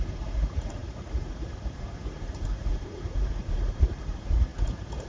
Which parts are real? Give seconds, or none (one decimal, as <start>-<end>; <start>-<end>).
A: none